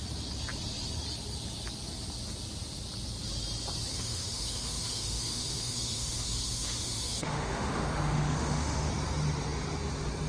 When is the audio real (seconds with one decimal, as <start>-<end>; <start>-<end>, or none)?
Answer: 0.0-3.9; 8.9-10.3

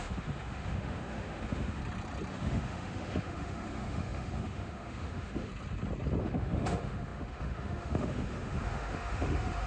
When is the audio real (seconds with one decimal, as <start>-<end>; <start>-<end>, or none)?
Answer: 1.8-2.3; 5.5-6.2

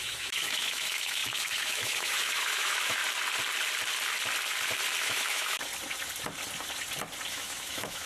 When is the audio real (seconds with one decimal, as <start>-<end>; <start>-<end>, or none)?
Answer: 3.0-5.0; 5.7-7.3

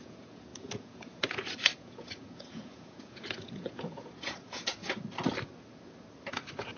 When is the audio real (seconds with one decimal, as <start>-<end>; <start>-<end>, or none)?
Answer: 4.8-6.3